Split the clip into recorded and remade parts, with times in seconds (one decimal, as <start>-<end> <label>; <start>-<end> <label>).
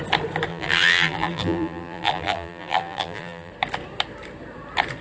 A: 0.0-0.5 recorded; 0.5-3.5 remade; 3.5-5.0 recorded